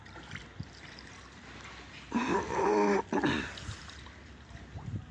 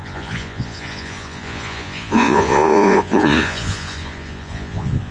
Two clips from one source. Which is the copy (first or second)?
second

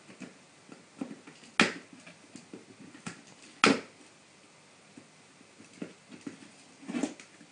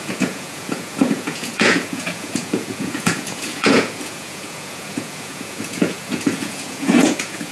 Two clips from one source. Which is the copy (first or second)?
second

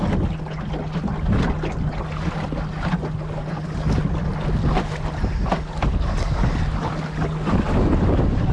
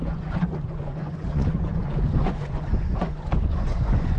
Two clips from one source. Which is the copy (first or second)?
second